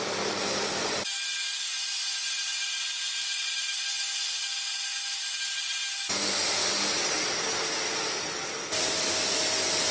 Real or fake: real